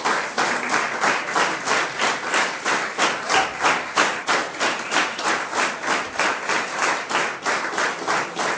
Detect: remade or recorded recorded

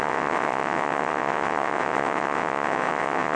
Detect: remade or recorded remade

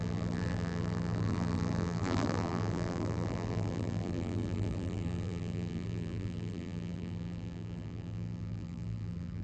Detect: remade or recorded remade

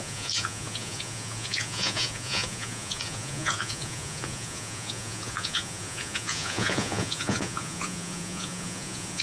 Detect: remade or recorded remade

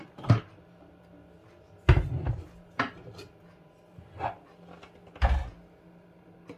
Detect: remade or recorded recorded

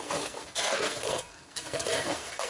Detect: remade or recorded remade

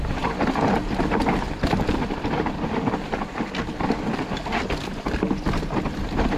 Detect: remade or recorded recorded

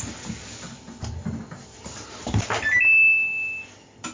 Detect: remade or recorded recorded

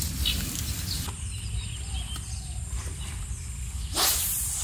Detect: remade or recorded recorded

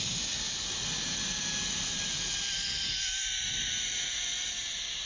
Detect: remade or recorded recorded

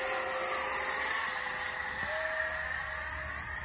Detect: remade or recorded recorded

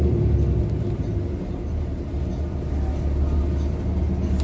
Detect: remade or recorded recorded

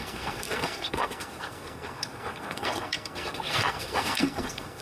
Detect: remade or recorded remade